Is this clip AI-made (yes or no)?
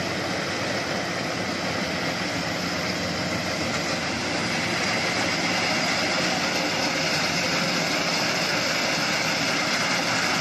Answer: no